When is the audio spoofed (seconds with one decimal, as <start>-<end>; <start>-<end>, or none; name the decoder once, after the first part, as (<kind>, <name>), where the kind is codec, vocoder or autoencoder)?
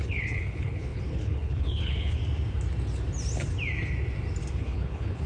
0.0-2.2 (codec, HILCodec); 4.5-5.3